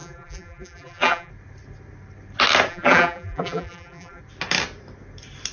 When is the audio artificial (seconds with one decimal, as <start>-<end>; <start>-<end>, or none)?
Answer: 0.0-1.3; 2.7-4.2